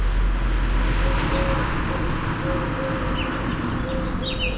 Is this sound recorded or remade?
recorded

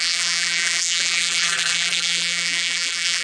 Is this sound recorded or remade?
remade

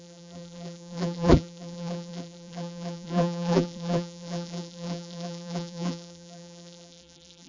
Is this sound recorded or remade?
remade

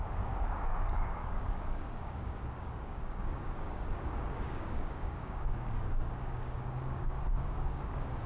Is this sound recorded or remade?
remade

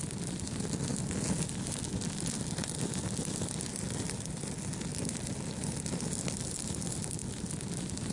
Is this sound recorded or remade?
recorded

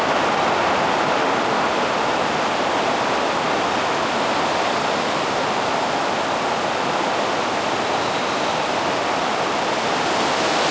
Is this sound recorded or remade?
recorded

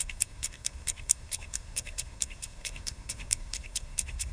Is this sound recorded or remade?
remade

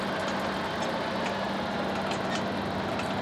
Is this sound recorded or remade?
recorded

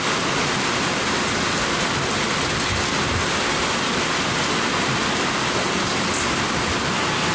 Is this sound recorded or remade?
recorded